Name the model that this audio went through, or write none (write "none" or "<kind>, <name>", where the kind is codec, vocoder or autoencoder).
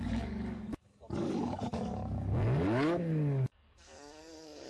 codec, DAC